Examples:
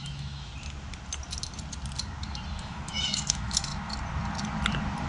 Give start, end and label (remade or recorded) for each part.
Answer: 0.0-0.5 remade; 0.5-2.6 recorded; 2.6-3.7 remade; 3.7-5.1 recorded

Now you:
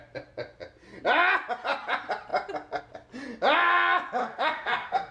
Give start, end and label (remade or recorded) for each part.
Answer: 0.0-4.2 recorded; 4.2-5.1 remade

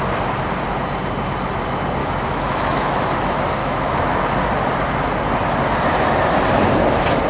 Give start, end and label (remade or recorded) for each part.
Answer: 0.0-2.0 recorded; 2.0-2.9 remade; 2.9-3.6 recorded; 3.6-4.2 remade; 4.2-7.3 recorded